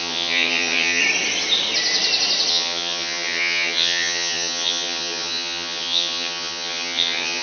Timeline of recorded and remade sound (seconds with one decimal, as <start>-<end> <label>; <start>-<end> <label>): 0.0-1.0 remade; 1.0-2.5 recorded; 2.5-7.4 remade